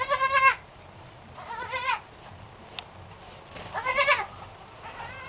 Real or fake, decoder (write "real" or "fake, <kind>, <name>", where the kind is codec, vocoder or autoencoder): real